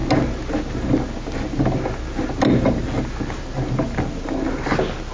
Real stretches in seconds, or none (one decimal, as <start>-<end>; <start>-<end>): 0.0-5.1